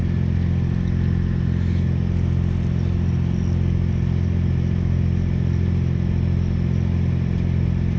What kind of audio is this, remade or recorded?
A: recorded